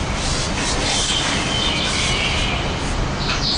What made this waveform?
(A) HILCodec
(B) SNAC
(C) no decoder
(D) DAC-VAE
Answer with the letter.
C